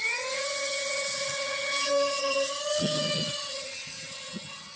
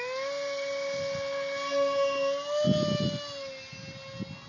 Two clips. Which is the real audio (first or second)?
second